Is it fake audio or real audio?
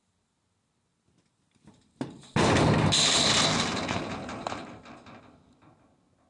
real